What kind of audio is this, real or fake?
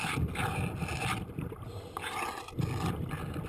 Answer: real